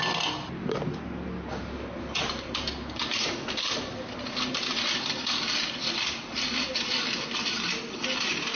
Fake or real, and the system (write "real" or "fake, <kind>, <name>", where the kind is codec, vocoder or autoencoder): real